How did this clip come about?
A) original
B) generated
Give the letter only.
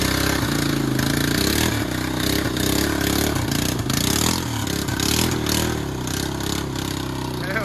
A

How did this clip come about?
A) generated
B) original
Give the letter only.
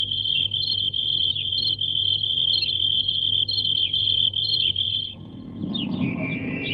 A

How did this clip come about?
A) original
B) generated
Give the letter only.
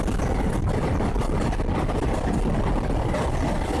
A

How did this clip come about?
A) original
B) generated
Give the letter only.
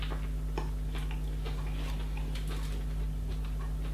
A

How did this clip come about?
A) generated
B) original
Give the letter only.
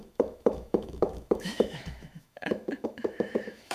A